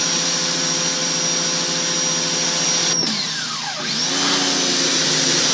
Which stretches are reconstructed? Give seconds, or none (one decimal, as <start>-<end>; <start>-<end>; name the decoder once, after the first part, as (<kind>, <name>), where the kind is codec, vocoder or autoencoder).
none